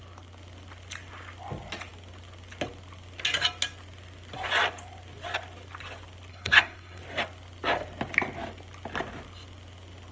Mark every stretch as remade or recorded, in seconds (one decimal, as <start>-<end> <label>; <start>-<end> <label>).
0.0-6.3 recorded; 6.3-7.0 remade; 7.0-10.1 recorded